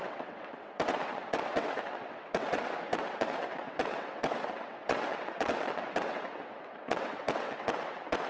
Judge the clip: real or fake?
fake